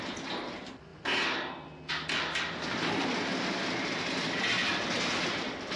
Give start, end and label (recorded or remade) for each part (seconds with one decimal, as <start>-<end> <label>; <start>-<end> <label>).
0.0-5.8 recorded